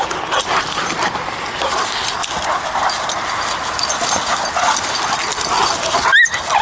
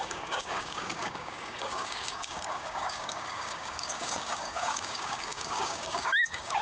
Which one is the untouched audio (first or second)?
first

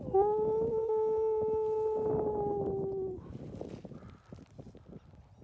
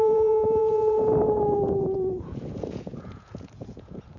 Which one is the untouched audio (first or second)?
first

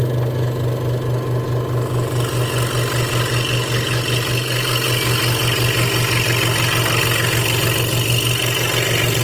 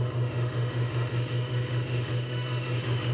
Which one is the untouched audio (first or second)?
first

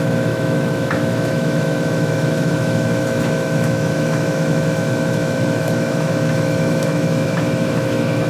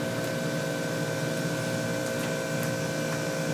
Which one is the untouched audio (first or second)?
second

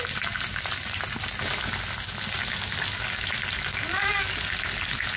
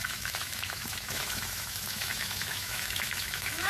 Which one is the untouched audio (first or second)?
first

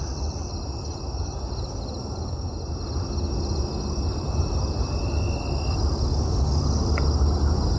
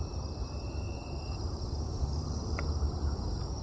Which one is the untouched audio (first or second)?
first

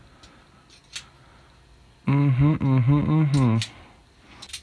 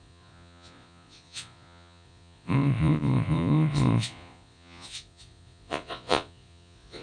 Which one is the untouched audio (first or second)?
first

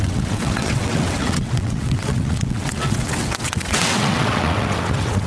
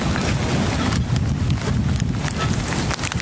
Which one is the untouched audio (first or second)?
second